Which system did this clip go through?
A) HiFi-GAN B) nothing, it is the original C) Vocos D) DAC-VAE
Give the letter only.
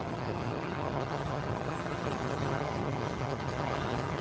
A